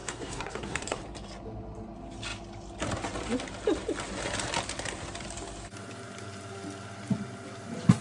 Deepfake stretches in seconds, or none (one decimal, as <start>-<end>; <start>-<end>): 0.0-1.0